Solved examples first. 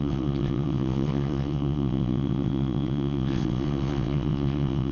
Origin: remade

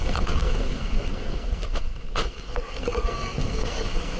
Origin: remade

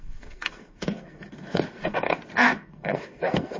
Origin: remade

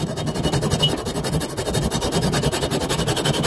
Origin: recorded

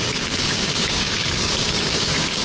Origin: remade